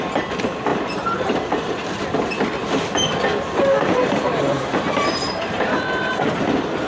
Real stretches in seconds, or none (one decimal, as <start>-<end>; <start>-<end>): 0.0-0.7; 2.0-3.3; 6.4-6.9